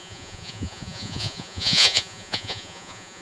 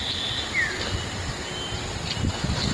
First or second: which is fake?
first